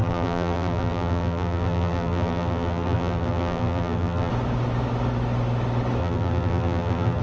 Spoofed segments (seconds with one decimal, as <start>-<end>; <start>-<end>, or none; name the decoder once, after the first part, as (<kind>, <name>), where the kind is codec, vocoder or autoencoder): 0.0-4.3 (vocoder, BigVGAN v2); 6.0-7.2